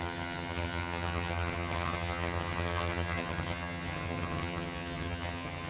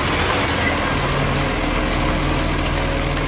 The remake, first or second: first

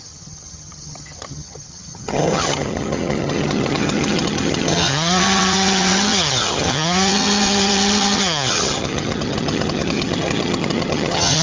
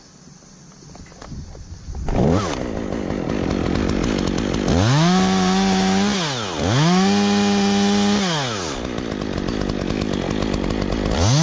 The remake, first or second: first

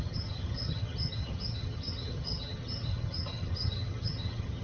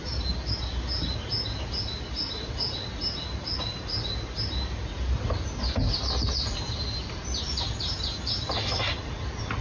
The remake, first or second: first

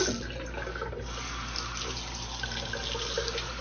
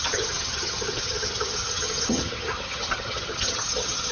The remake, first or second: second